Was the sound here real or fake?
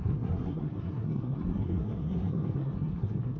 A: fake